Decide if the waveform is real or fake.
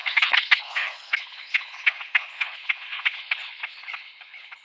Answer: fake